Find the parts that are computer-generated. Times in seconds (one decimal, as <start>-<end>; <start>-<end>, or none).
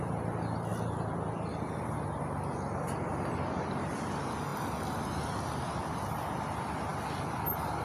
none